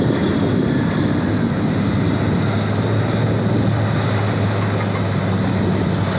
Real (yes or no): yes